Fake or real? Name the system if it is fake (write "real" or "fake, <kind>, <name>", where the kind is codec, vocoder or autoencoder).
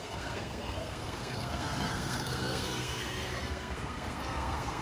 fake, codec, SNAC